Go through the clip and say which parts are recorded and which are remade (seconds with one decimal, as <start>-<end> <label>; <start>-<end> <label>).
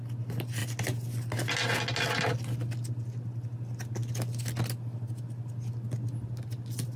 0.0-7.0 recorded